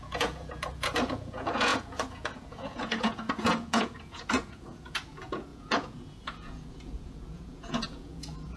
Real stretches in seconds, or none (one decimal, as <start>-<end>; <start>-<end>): none

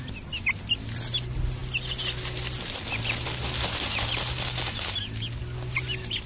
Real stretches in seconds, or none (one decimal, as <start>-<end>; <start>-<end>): 0.0-6.3